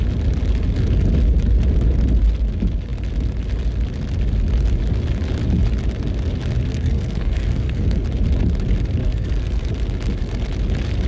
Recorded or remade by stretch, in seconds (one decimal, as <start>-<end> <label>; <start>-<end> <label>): 0.0-6.7 recorded; 6.7-8.0 remade; 8.0-9.0 recorded; 9.0-9.7 remade; 9.7-11.1 recorded